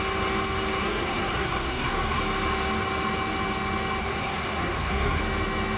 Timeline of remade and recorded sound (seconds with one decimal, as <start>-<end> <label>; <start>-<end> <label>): 0.0-0.8 recorded; 0.8-2.2 remade; 2.2-4.0 recorded; 4.0-5.2 remade; 5.2-5.8 recorded